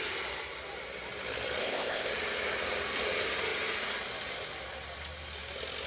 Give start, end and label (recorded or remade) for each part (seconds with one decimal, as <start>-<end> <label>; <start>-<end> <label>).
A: 0.0-1.6 recorded; 1.6-2.1 remade; 2.1-5.9 recorded